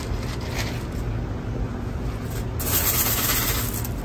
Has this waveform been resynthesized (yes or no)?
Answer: no